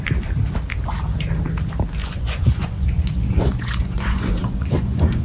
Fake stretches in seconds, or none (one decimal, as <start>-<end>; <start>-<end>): 2.0-5.2